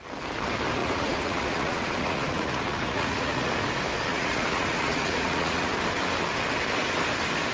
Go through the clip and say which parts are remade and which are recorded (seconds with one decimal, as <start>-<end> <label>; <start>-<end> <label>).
0.0-0.8 recorded; 0.8-3.5 remade; 3.5-4.1 recorded; 4.1-5.7 remade; 5.7-7.5 recorded